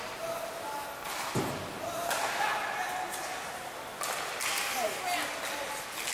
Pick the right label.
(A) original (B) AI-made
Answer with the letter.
A